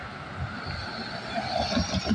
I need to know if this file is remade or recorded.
recorded